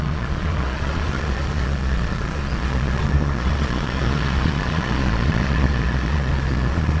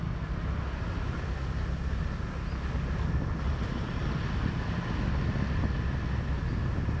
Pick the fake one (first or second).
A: first